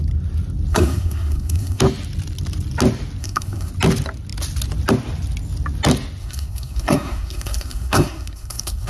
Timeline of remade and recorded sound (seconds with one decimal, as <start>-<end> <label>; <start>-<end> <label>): 0.0-0.7 recorded; 0.7-1.8 remade; 1.8-3.2 recorded; 3.2-3.7 remade; 3.7-6.2 recorded; 6.2-8.9 remade